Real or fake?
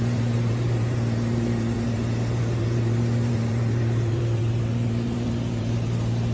fake